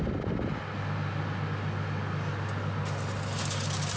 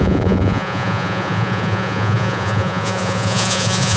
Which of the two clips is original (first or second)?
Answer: first